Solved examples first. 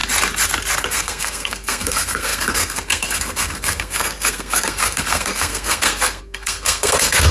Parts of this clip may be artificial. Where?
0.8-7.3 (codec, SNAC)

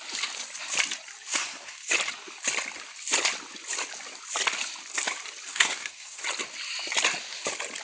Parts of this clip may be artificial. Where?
1.3-1.9 (codec, SNAC); 5.5-6.2

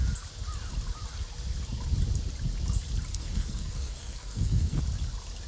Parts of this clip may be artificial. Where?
3.1-4.8 (codec, SNAC)

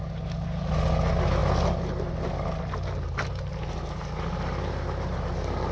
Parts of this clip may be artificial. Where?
none

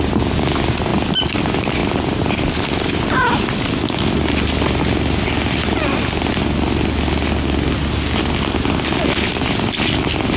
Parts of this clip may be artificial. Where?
none

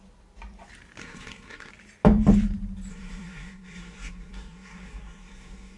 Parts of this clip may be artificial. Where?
1.0-1.7 (codec, SNAC); 2.9-5.8

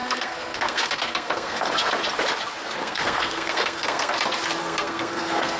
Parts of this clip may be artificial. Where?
0.0-1.7 (codec, SNAC); 2.8-4.1; 4.6-5.6

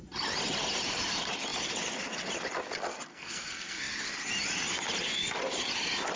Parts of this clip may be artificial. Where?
3.1-3.9 (codec, SNAC)